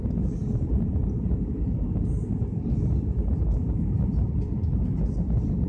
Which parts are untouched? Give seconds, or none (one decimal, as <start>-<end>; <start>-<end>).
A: 0.0-5.7